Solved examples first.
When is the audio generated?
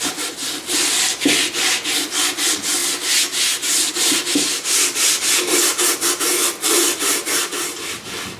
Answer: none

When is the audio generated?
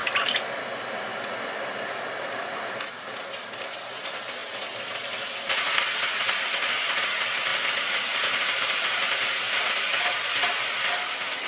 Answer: 0.0-0.6; 1.1-2.0; 4.4-5.2; 7.5-9.6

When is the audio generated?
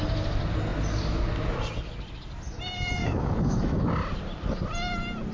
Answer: 3.0-3.9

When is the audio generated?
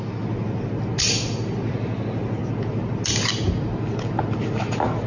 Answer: none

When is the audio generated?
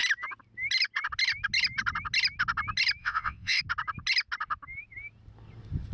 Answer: 3.0-3.6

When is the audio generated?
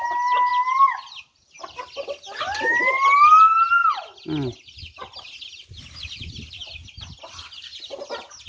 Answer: none